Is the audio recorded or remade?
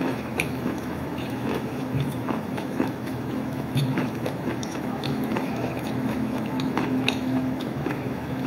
remade